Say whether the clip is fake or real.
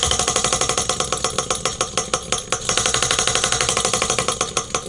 real